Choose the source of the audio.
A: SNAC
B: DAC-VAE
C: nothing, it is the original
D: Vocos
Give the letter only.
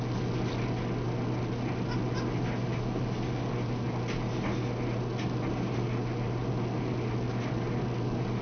C